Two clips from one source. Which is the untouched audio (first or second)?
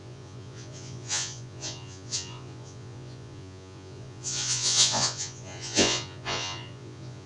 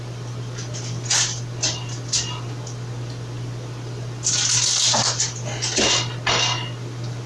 second